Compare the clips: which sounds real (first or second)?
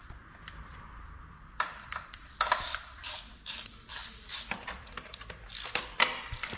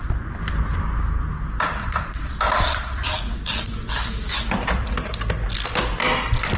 second